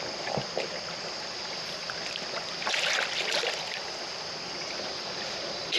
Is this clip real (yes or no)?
yes